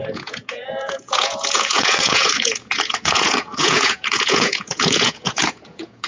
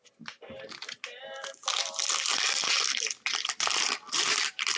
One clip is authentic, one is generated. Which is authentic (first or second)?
second